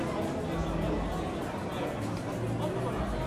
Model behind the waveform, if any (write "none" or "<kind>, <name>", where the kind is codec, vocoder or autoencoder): none